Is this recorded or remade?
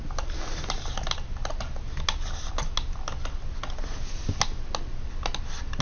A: recorded